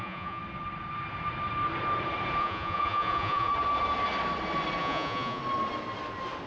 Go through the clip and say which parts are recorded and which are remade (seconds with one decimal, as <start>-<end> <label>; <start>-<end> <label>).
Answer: 0.0-0.4 remade; 0.4-2.4 recorded; 2.4-3.5 remade; 3.5-4.8 recorded; 4.8-5.4 remade; 5.4-6.5 recorded